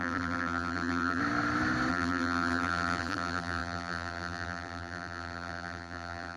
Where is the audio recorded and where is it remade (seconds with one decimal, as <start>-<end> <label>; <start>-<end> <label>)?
0.0-1.2 remade; 1.2-1.9 recorded; 1.9-6.4 remade